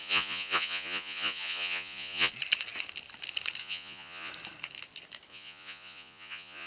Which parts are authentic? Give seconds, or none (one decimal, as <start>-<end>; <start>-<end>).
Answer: 2.3-3.6; 4.3-5.3

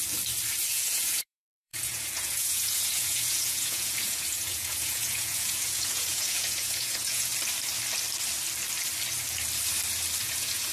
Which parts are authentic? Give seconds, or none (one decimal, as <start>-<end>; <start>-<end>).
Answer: 0.0-0.7; 7.3-10.2